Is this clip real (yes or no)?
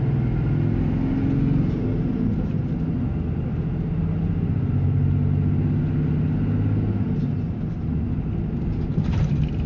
yes